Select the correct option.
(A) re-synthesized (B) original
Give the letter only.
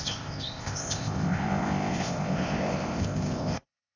A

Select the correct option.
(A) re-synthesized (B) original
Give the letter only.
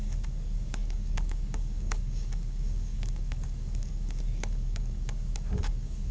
A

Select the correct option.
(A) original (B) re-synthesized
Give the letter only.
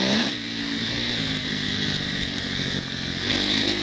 B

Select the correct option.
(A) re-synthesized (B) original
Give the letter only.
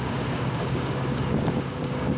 A